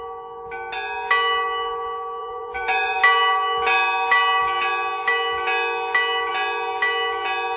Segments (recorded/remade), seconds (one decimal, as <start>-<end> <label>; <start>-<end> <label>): 0.0-2.2 recorded; 2.2-3.0 remade; 3.0-7.6 recorded